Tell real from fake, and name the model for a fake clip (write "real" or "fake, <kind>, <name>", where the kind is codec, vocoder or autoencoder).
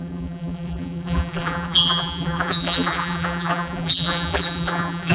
fake, vocoder, BigVGAN v2